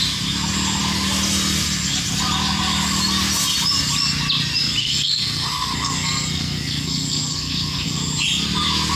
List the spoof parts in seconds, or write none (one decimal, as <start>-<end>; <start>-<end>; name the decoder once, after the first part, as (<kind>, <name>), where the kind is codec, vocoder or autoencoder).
4.8-8.0 (codec, SNAC)